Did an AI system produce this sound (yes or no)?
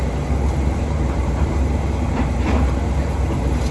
yes